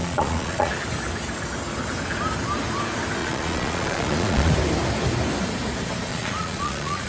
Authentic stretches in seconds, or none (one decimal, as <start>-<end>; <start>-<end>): 0.7-3.2; 4.5-6.1